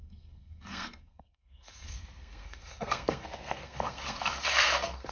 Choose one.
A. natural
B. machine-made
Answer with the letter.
B